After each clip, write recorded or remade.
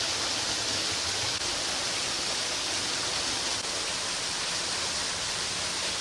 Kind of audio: recorded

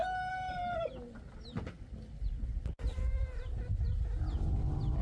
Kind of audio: recorded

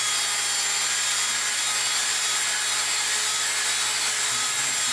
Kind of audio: recorded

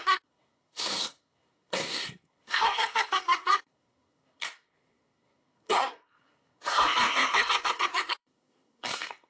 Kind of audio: remade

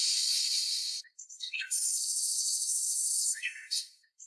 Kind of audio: remade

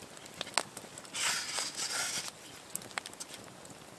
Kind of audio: recorded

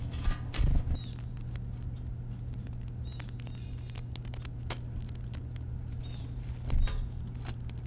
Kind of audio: recorded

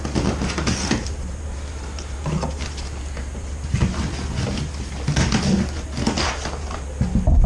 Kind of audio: recorded